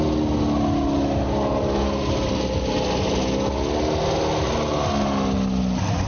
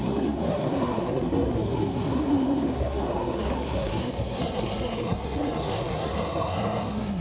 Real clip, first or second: first